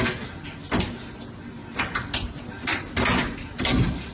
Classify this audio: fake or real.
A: real